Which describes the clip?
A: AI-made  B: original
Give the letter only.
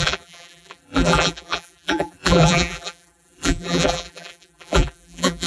A